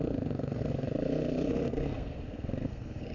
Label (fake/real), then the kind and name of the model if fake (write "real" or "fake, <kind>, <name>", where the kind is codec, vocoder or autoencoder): fake, codec, SNAC